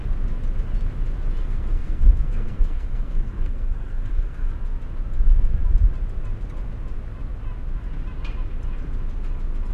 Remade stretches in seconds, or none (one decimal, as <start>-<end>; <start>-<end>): 1.4-4.5